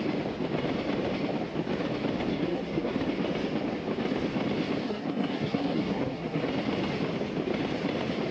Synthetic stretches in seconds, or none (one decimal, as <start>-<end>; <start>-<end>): 2.3-2.9; 4.8-6.4